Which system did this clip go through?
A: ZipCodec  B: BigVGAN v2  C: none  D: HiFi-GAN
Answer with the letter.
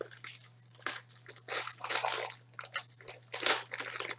C